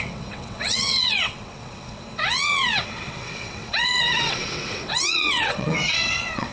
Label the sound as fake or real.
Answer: fake